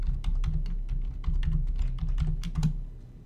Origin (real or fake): real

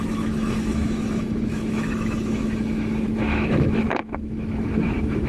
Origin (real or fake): fake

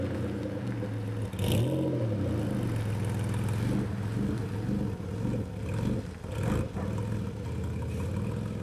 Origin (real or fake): real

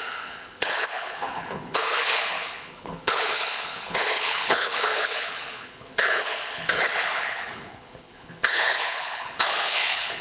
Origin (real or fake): fake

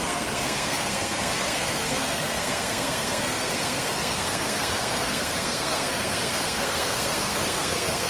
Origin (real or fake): fake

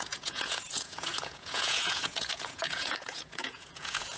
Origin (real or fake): fake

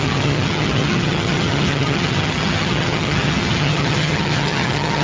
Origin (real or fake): fake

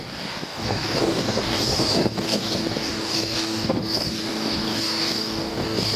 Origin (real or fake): fake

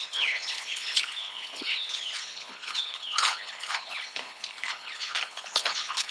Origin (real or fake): fake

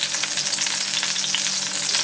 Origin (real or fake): real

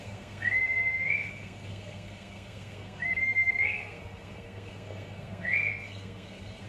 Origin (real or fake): fake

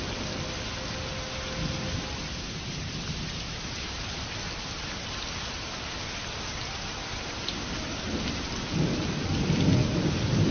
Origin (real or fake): real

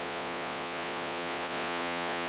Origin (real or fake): fake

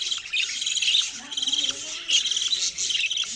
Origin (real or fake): real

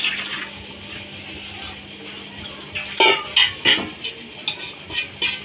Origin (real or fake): real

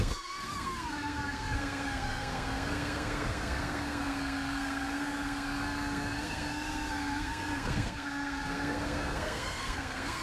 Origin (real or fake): fake